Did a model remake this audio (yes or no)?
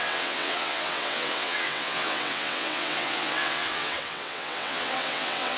yes